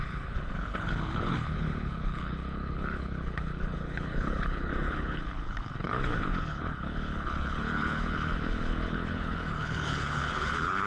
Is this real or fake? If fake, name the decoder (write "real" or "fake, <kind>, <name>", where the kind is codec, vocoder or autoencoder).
fake, codec, HILCodec